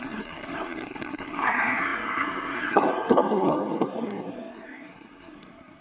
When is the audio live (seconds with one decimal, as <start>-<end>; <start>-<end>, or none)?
none